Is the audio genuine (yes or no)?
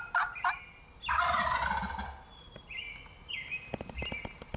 yes